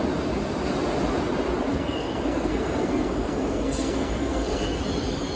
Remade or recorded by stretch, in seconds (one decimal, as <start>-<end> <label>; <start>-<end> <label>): 0.0-1.7 recorded; 1.7-4.8 remade; 4.8-5.4 recorded